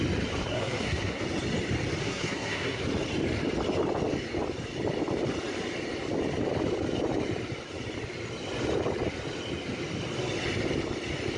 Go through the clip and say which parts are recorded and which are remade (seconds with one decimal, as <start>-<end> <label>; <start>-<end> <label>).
0.0-0.5 recorded; 0.5-1.2 remade; 1.2-2.0 recorded; 2.0-2.8 remade; 2.8-11.4 recorded